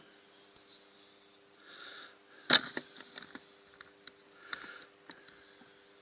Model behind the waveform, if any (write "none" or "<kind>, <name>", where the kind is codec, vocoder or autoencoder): none